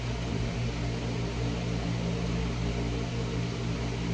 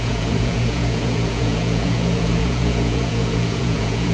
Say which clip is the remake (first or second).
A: second